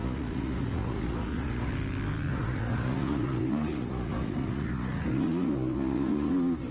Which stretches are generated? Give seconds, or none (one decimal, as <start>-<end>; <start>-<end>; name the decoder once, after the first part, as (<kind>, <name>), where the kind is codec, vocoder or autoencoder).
0.0-1.7 (vocoder, Vocos); 2.3-6.3